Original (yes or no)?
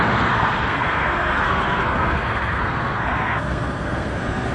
no